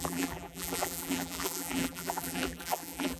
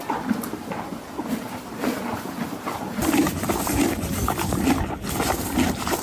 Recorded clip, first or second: second